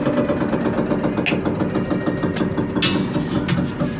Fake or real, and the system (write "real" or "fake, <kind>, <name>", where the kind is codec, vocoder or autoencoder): real